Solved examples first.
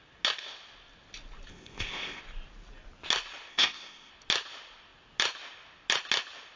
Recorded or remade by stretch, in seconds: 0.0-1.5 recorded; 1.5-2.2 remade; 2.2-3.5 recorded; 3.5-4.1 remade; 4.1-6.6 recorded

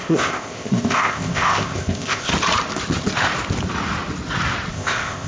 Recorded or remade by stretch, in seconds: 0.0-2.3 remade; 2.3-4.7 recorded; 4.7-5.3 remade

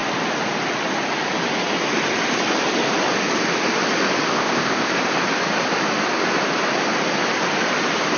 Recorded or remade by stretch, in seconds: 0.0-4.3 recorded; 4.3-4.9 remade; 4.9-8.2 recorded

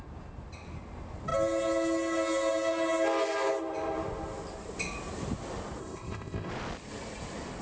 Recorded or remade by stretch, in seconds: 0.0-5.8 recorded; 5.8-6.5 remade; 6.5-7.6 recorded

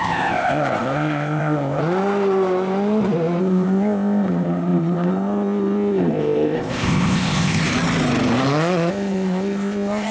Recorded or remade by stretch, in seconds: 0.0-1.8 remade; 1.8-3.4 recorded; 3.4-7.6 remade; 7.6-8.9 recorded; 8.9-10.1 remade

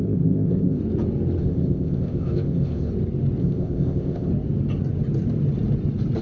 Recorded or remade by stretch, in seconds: 0.0-0.8 remade; 0.8-1.4 recorded; 1.4-2.9 remade; 2.9-3.4 recorded; 3.4-4.3 remade; 4.3-6.2 recorded

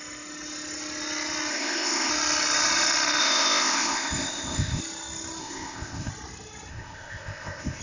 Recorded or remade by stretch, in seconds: 0.0-1.5 recorded; 1.5-2.1 remade; 2.1-3.2 recorded; 3.2-4.8 remade; 4.8-5.4 recorded; 5.4-6.1 remade; 6.1-6.7 recorded; 6.7-7.8 remade

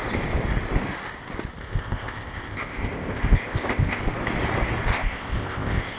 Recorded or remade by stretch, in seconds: 0.0-1.6 recorded; 1.6-4.0 remade; 4.0-4.9 recorded; 4.9-6.0 remade